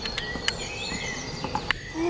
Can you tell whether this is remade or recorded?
recorded